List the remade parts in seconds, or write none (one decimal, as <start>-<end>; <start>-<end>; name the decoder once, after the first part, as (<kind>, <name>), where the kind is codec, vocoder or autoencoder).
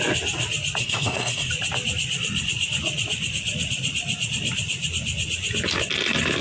0.8-1.5 (codec, SNAC)